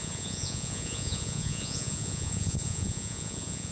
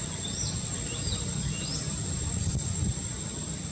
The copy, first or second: first